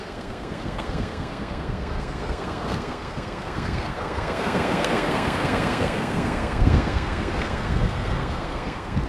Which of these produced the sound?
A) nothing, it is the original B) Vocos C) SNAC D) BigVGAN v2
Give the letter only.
C